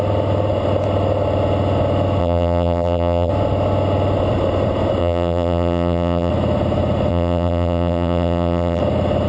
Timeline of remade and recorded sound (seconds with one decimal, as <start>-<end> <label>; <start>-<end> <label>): 0.0-2.2 recorded; 2.2-3.3 remade; 3.3-5.0 recorded; 5.0-6.3 remade; 6.3-7.1 recorded; 7.1-8.8 remade; 8.8-9.3 recorded